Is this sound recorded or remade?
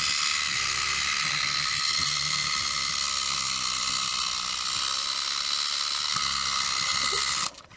recorded